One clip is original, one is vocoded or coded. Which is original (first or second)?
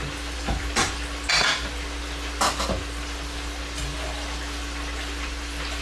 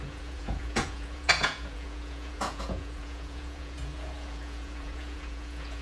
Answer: first